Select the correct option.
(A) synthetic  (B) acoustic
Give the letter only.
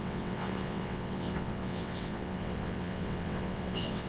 A